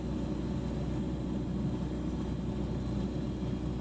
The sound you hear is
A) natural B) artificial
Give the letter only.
A